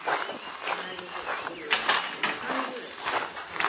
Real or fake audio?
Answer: real